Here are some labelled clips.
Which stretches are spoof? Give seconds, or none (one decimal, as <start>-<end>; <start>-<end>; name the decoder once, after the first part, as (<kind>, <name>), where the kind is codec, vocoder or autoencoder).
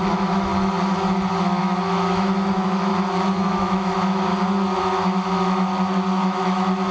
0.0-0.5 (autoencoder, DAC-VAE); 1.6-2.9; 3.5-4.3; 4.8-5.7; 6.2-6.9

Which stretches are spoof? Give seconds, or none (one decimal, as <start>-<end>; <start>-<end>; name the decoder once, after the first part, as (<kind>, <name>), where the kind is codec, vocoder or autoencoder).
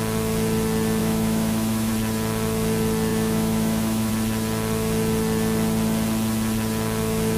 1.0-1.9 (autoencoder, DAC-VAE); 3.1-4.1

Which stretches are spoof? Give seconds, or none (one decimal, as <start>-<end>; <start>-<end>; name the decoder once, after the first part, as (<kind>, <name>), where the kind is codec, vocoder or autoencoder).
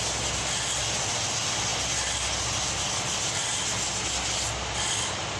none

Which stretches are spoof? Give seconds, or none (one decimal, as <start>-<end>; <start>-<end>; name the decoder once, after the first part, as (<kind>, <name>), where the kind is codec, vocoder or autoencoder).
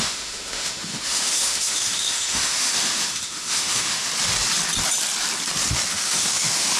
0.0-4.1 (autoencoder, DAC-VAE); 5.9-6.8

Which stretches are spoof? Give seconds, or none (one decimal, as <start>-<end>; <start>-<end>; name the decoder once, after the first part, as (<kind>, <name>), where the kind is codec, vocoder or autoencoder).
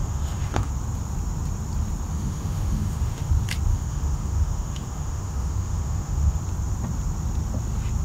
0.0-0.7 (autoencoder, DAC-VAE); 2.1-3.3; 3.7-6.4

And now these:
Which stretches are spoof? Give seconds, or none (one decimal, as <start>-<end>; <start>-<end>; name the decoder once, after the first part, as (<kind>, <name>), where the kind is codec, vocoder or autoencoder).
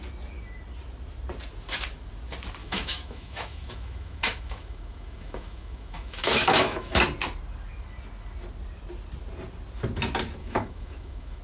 2.6-7.0 (autoencoder, DAC-VAE); 10.4-11.4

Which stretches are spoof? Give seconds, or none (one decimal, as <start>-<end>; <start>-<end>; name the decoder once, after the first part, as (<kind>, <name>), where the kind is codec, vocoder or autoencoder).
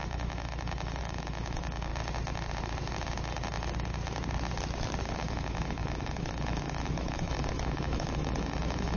0.0-1.9 (autoencoder, DAC-VAE); 5.2-9.0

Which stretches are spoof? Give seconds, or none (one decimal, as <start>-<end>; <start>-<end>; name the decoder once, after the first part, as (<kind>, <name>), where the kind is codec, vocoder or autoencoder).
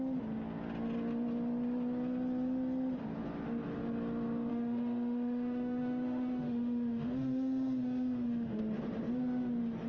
4.5-8.6 (autoencoder, DAC-VAE)